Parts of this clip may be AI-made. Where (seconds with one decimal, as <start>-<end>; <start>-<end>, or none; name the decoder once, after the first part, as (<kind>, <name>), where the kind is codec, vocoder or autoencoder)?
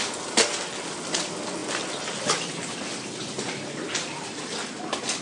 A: none